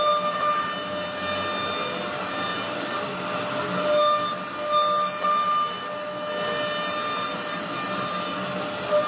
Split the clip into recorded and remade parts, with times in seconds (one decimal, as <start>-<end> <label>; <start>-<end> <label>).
0.0-9.1 recorded